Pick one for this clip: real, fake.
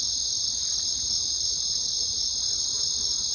fake